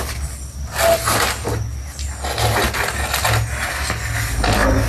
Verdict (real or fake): real